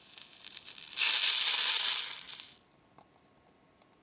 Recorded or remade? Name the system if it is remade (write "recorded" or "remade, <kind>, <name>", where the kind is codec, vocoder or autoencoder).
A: remade, vocoder, BigVGAN v2